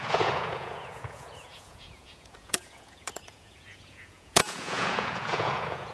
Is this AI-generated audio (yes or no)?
yes